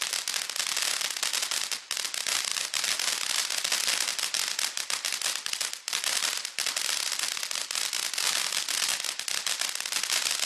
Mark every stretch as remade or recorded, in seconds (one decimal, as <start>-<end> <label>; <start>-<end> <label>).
0.0-2.5 recorded; 2.5-3.1 remade; 3.1-4.1 recorded; 4.1-7.9 remade; 7.9-8.9 recorded; 8.9-9.6 remade; 9.6-10.5 recorded